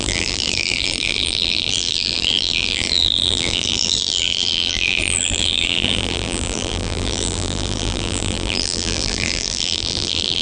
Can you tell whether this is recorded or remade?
remade